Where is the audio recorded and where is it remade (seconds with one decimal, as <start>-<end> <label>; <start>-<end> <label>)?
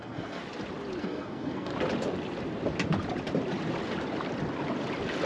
0.0-0.4 remade; 0.4-1.0 recorded; 1.0-1.7 remade; 1.7-5.3 recorded